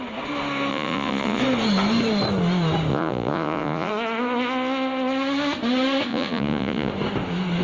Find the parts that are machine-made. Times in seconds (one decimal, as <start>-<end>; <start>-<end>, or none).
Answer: 0.7-1.4; 2.9-3.9; 6.1-6.9